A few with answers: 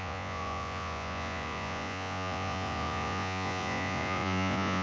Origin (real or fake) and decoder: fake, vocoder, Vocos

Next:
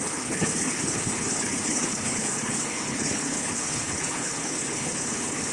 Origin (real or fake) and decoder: fake, codec, HILCodec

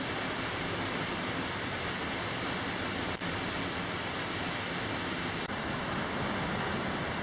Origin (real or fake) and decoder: real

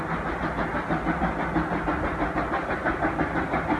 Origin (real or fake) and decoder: real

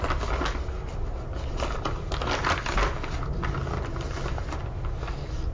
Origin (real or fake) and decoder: real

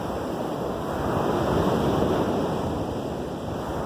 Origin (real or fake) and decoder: real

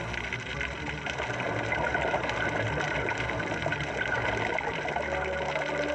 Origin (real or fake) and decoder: real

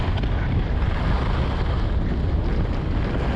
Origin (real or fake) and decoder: real